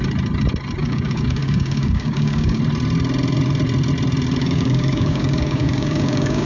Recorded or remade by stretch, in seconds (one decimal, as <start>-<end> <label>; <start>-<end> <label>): 0.0-0.8 recorded; 0.8-2.6 remade; 2.6-4.4 recorded; 4.4-6.5 remade